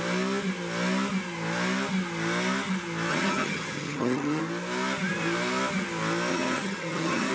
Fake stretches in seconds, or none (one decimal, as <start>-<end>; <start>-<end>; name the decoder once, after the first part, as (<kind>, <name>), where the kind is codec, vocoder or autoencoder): 3.1-4.4 (vocoder, HiFi-GAN); 6.3-7.3